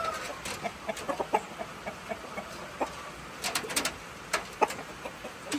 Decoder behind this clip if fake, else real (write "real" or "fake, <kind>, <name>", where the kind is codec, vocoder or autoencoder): real